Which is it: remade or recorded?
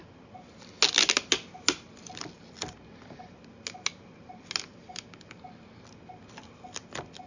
recorded